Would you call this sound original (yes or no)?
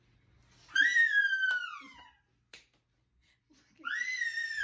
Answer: yes